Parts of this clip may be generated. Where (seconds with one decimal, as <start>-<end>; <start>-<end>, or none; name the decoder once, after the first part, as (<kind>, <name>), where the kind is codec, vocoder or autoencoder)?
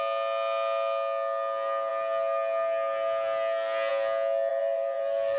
4.5-5.4 (vocoder, BigVGAN v2)